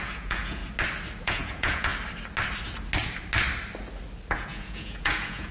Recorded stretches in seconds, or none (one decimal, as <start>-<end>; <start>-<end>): 0.6-1.2; 1.9-4.3